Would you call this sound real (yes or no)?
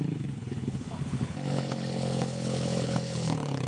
no